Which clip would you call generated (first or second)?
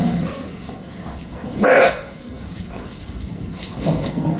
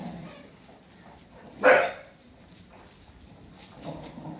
first